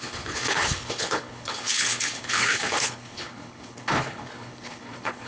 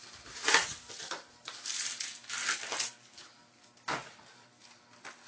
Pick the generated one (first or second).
first